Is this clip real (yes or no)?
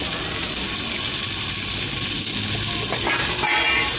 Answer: yes